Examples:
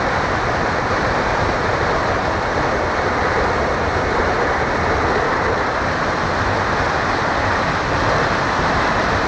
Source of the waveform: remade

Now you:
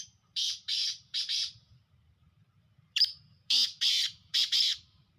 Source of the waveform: remade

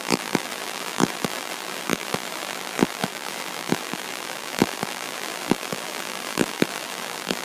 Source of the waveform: remade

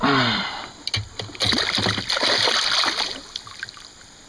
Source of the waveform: recorded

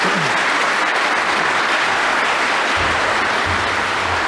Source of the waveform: recorded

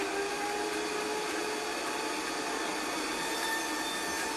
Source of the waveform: recorded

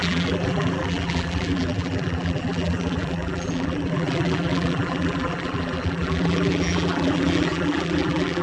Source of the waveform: remade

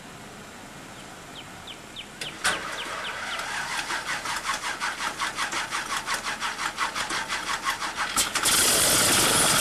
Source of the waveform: recorded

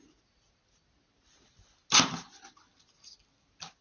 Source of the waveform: recorded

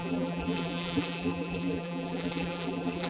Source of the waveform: remade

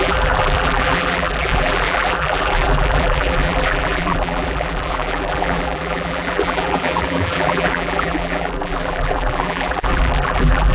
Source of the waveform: remade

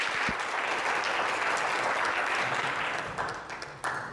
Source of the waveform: recorded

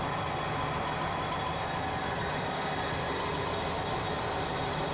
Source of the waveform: recorded